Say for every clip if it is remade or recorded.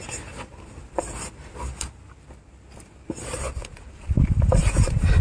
recorded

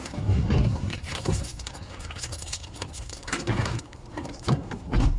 remade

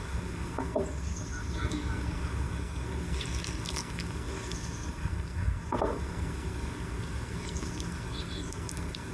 remade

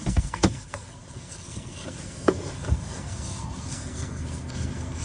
remade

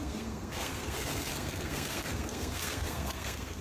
remade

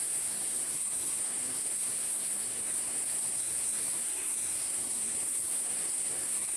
remade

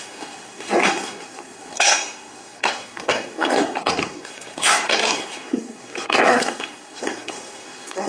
remade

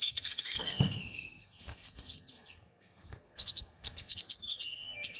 remade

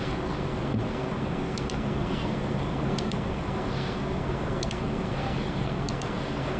remade